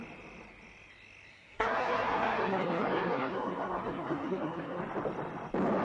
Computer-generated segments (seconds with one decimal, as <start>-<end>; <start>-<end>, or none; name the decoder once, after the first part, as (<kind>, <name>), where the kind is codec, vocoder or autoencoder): 1.3-4.8 (codec, SNAC)